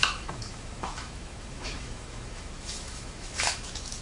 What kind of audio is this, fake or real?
fake